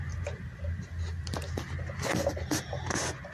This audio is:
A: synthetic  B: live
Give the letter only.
B